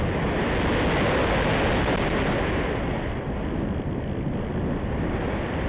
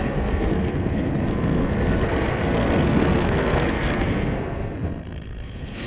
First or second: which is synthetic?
second